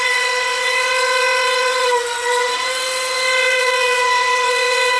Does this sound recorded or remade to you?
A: remade